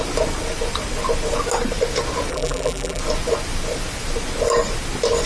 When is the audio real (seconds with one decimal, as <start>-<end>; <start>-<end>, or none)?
0.0-2.3; 3.0-5.3